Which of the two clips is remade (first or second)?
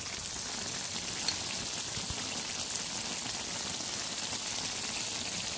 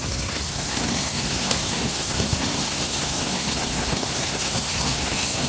second